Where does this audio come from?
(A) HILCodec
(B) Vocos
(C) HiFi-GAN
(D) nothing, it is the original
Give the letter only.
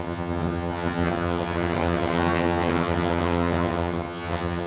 C